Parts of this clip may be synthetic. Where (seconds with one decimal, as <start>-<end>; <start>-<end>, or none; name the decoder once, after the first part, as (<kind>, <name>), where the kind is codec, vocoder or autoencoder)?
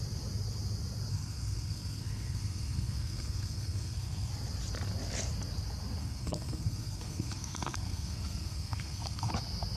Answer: 1.1-4.3 (codec, SNAC); 6.0-9.3